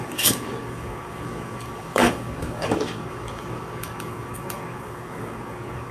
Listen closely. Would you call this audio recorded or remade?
remade